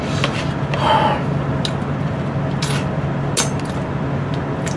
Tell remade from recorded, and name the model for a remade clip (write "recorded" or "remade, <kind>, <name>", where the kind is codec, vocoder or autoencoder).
recorded